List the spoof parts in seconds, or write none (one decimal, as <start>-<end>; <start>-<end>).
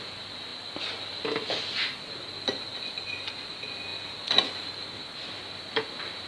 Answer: none